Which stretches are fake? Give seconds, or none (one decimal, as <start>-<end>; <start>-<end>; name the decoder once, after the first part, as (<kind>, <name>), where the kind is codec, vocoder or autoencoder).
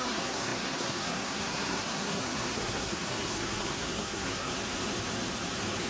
0.0-4.5 (codec, SNAC)